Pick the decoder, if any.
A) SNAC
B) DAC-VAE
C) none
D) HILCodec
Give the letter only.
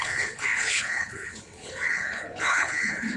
D